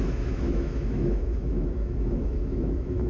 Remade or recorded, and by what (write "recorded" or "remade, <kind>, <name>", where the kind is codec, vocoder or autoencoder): remade, autoencoder, DAC-VAE